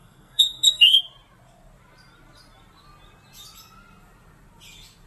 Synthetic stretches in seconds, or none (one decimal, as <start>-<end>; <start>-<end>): 0.0-1.0